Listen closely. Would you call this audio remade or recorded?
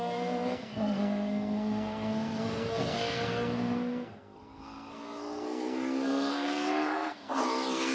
remade